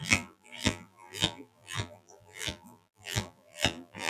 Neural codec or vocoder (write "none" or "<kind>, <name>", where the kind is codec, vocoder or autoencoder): vocoder, BigVGAN v2